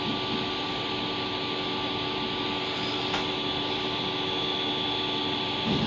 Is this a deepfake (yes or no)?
no